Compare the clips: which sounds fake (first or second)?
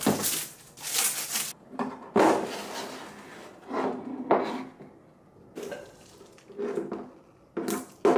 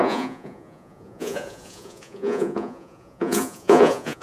second